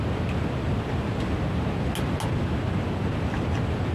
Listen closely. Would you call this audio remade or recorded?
recorded